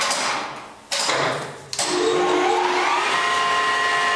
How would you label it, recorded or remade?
recorded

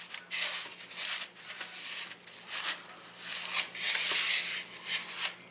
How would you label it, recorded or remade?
recorded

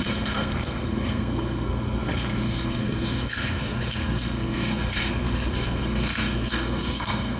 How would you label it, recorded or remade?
remade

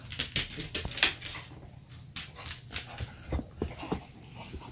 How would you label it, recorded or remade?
recorded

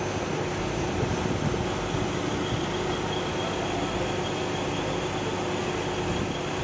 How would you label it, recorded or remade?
recorded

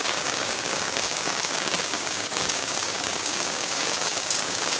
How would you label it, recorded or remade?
remade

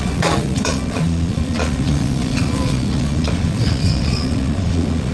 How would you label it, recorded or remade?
remade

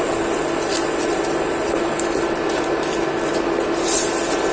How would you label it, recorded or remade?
recorded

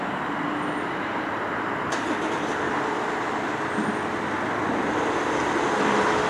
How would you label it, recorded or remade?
recorded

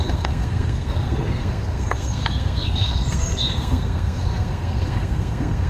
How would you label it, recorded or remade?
remade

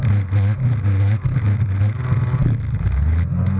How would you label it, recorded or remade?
recorded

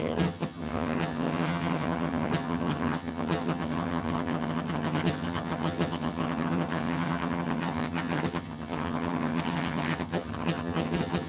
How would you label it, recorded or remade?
remade